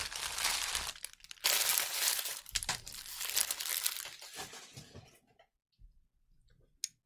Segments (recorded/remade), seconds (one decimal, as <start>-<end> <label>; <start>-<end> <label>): 0.0-1.7 recorded; 1.7-2.8 remade; 2.8-7.1 recorded

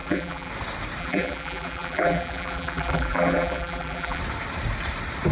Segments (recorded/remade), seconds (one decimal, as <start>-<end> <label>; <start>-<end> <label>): 0.0-0.5 remade; 0.5-1.0 recorded; 1.0-4.2 remade; 4.2-5.3 recorded

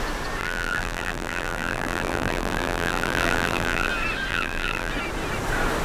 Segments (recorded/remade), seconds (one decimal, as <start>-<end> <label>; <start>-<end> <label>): 0.0-0.4 recorded; 0.4-3.9 remade; 3.9-4.3 recorded; 4.3-4.9 remade; 4.9-5.8 recorded

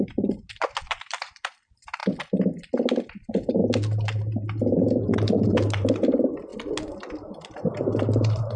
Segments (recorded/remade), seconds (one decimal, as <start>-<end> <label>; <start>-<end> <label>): 0.0-2.0 remade; 2.0-3.1 recorded; 3.1-3.6 remade; 3.6-4.7 recorded; 4.7-6.5 remade; 6.5-8.2 recorded; 8.2-8.6 remade